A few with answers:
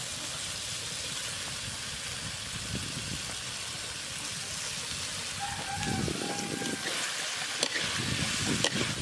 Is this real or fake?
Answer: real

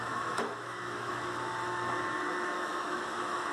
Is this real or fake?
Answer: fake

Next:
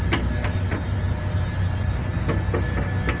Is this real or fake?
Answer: real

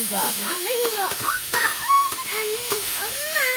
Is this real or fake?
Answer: fake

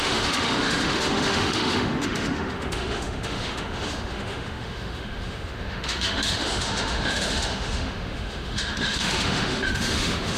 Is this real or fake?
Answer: fake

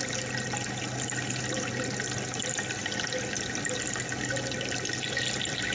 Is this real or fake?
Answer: real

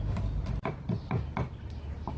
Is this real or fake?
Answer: real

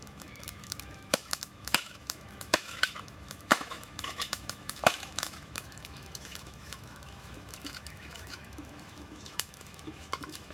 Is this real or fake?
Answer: fake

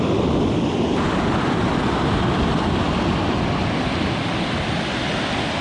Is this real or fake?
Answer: real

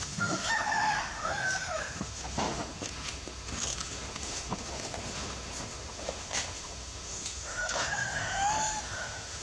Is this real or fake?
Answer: fake